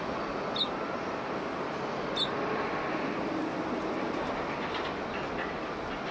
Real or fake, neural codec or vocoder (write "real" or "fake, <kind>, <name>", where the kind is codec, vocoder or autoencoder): real